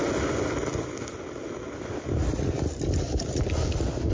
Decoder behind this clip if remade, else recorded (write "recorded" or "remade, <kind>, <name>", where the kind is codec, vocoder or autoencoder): recorded